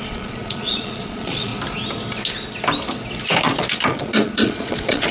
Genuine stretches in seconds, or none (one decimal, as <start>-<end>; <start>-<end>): 1.5-3.4